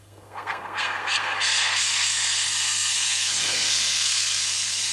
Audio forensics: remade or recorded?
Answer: remade